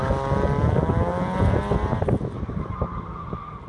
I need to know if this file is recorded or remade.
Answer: recorded